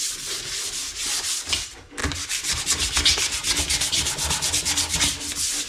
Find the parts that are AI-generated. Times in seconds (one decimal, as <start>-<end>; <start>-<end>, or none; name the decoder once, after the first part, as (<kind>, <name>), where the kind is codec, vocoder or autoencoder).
none